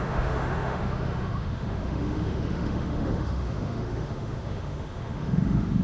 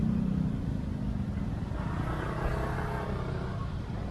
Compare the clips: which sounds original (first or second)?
second